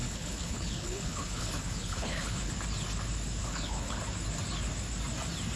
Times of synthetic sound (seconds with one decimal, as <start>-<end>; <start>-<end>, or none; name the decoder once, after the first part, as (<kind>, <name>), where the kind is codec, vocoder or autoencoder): 0.0-2.5 (codec, HILCodec); 3.4-4.0